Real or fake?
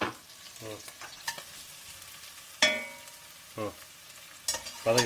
real